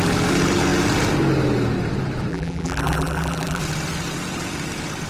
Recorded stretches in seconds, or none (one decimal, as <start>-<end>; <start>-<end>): 0.0-2.3; 3.6-5.1